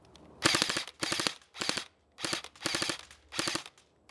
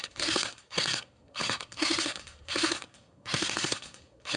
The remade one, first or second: second